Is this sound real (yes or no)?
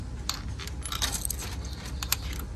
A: yes